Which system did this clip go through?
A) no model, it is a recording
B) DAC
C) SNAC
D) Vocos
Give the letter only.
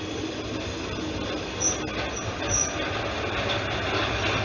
A